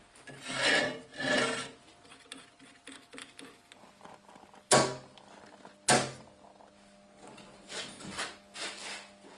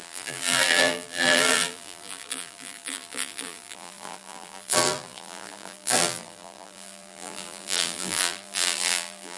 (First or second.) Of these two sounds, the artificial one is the second